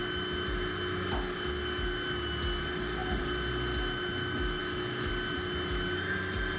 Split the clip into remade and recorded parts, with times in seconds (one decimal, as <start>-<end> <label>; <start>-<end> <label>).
0.0-6.6 recorded